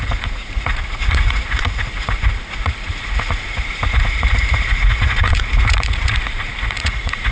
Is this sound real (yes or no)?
no